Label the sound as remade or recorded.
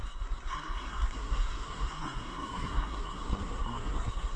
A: remade